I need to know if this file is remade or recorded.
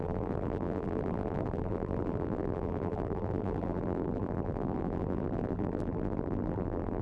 remade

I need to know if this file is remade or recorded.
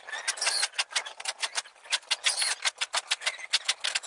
recorded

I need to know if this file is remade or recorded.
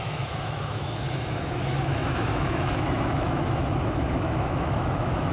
remade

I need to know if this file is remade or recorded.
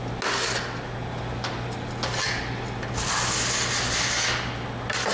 recorded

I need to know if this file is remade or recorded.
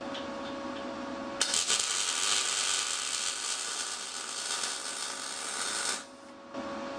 recorded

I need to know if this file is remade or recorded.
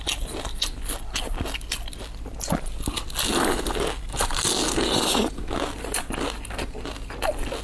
recorded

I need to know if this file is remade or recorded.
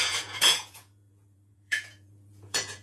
remade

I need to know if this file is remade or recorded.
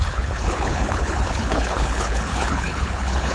remade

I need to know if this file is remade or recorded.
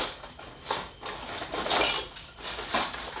recorded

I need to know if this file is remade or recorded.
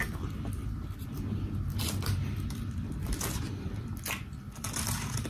recorded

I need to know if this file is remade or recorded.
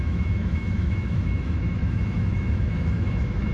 remade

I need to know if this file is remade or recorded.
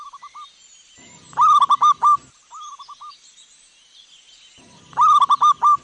recorded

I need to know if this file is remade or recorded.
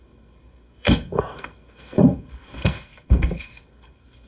remade